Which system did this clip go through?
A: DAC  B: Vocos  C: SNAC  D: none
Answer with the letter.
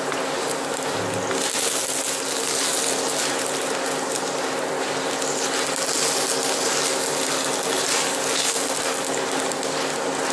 D